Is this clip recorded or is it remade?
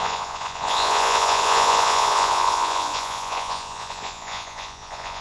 remade